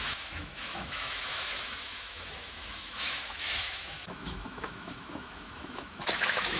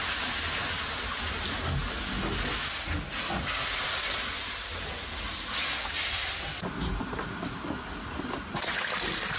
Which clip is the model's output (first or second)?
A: first